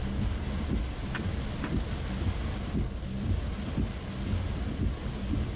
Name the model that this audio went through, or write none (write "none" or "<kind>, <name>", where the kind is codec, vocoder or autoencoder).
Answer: none